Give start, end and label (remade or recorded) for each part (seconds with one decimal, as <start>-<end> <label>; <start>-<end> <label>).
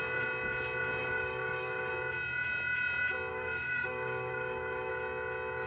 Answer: 0.0-1.0 recorded; 1.0-1.9 remade; 1.9-3.3 recorded; 3.3-4.9 remade; 4.9-5.7 recorded